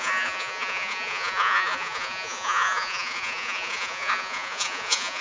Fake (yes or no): yes